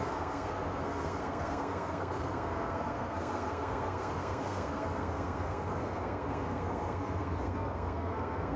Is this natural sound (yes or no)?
no